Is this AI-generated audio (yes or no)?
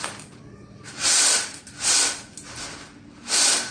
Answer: no